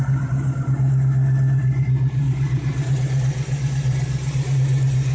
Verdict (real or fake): real